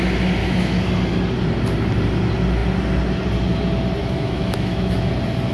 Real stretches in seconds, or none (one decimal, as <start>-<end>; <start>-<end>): 0.0-0.4; 0.9-4.0; 5.1-5.5